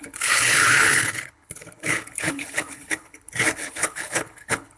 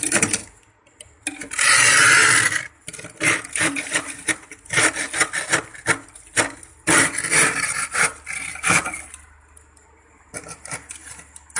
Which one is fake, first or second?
first